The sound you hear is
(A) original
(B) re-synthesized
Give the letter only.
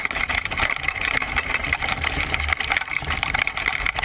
B